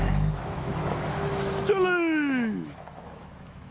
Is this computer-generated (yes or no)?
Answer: yes